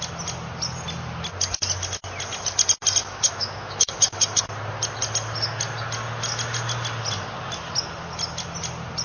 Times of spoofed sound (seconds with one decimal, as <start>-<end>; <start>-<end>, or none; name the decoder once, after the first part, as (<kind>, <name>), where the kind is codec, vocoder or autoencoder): 3.0-4.4 (autoencoder, DAC-VAE)